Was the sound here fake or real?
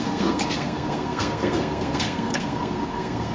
fake